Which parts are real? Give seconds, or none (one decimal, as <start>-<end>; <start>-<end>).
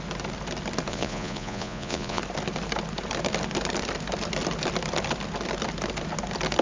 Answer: 0.0-0.9; 2.2-6.6